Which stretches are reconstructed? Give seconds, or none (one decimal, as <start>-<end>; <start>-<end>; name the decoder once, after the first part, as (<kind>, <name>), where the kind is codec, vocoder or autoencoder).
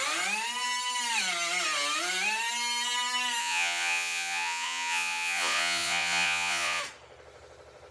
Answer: 3.4-6.8 (vocoder, Vocos)